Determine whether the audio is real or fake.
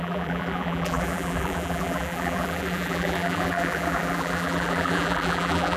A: fake